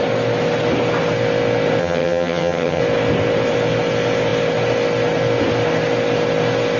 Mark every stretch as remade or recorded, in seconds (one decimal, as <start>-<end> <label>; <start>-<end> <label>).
0.0-1.8 recorded; 1.8-2.8 remade; 2.8-6.8 recorded